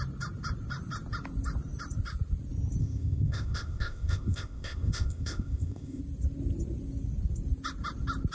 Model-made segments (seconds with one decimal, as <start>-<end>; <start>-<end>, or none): 2.8-6.0